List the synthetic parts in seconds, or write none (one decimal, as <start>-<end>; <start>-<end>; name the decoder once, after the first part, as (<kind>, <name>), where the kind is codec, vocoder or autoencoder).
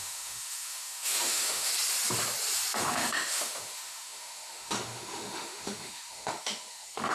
0.0-1.7 (autoencoder, DAC-VAE); 2.8-7.1